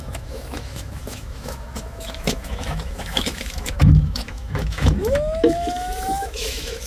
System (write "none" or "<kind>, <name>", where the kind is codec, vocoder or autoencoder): autoencoder, DAC-VAE